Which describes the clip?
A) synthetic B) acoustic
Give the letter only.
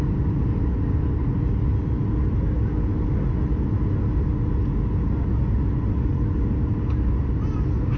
B